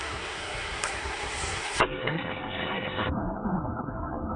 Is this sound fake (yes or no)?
yes